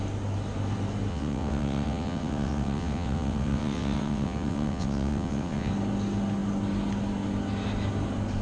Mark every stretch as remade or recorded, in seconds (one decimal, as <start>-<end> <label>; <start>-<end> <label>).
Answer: 0.0-1.1 recorded; 1.1-5.7 remade; 5.7-8.4 recorded